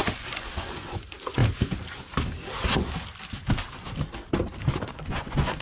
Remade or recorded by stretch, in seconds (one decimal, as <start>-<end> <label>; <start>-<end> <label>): 0.0-1.4 remade; 1.4-4.8 recorded; 4.8-5.6 remade